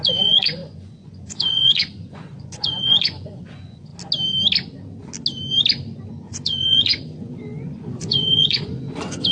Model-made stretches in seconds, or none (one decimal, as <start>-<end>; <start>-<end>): 0.0-3.9; 6.1-9.3